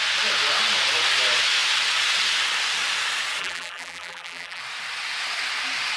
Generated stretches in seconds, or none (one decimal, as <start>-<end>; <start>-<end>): 3.4-4.6